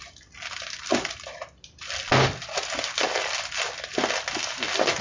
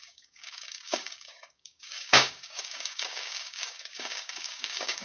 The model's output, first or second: second